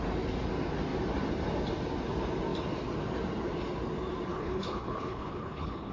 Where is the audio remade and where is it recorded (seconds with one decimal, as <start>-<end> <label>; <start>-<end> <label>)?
0.0-4.3 recorded; 4.3-5.9 remade